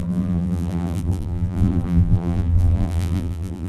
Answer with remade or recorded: remade